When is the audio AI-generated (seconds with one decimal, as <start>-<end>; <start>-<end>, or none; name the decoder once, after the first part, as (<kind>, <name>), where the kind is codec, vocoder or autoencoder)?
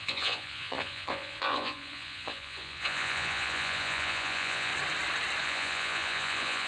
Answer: 0.0-4.7 (vocoder, Vocos); 5.4-6.7